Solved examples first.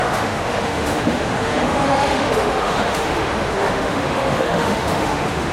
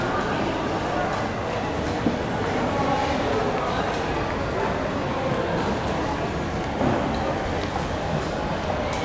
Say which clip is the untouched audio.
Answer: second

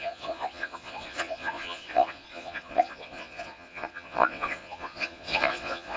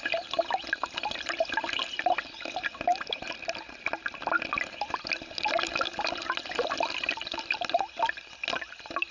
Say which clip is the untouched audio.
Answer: second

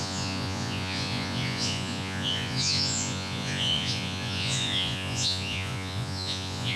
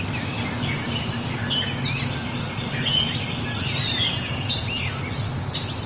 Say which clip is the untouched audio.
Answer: second